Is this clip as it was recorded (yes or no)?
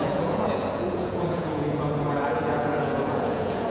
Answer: no